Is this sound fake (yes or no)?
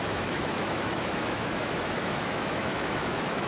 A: yes